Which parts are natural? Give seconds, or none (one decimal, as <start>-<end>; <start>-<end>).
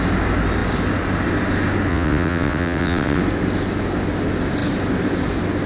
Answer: 0.0-1.9; 3.2-5.7